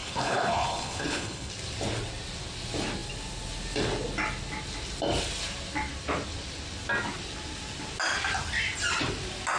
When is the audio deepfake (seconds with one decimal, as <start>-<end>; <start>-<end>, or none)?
0.0-1.5